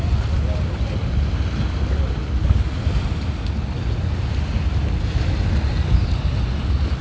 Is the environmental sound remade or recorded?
recorded